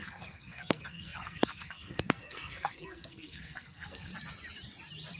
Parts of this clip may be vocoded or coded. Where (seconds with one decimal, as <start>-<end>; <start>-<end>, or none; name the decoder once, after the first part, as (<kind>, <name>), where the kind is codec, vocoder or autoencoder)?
0.0-4.1 (codec, SNAC)